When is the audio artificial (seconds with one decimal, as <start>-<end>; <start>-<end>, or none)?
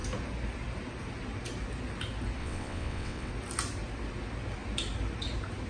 2.4-3.3